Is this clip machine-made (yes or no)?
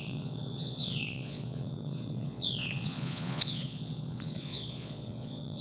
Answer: yes